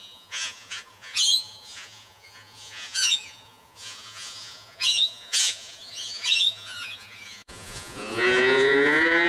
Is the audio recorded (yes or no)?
no